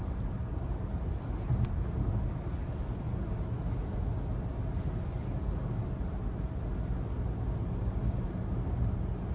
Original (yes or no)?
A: yes